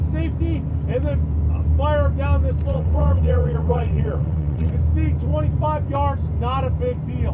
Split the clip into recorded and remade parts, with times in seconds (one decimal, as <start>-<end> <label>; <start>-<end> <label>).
0.0-2.7 recorded; 2.7-4.7 remade; 4.7-7.3 recorded